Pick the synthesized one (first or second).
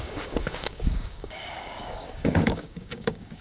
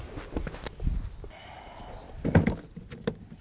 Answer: first